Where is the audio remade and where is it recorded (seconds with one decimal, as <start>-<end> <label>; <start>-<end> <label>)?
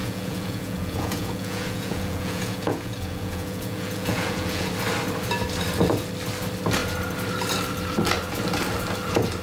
0.0-4.7 remade; 4.7-9.4 recorded